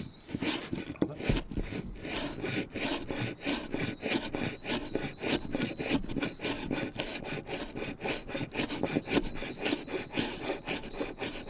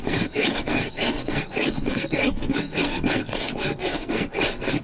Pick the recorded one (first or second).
first